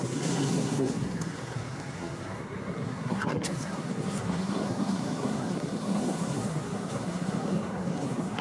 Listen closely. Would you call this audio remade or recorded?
remade